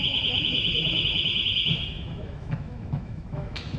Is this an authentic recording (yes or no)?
no